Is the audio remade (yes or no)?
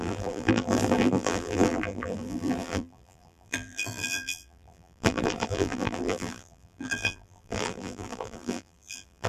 yes